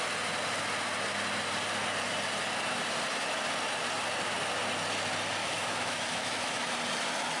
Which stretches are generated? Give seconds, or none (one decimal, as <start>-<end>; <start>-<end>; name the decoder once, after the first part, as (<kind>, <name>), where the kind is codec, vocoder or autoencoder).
5.4-6.7 (autoencoder, DAC-VAE)